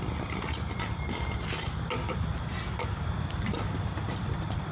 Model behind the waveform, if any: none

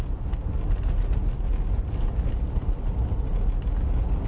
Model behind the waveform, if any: none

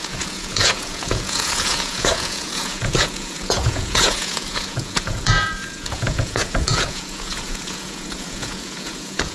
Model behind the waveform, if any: vocoder, Vocos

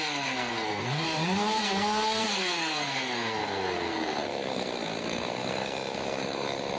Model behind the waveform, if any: codec, SNAC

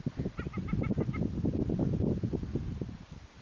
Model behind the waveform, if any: none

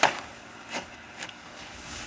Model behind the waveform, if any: codec, DAC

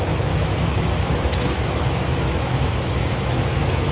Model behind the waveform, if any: autoencoder, DAC-VAE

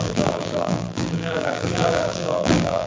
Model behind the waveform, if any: vocoder, BigVGAN v2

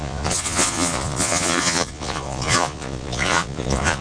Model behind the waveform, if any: vocoder, Vocos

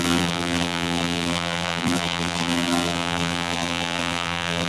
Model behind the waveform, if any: vocoder, BigVGAN v2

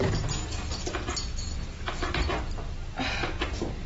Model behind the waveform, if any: none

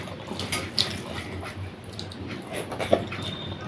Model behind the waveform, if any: none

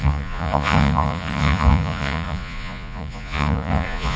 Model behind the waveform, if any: vocoder, Vocos